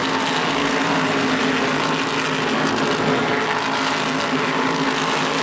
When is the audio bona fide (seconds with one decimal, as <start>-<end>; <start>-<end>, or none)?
0.0-5.4